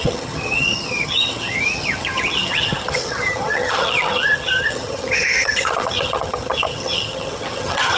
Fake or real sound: fake